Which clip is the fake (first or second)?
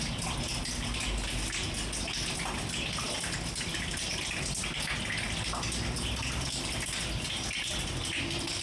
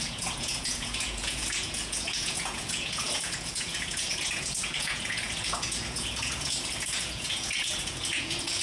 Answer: second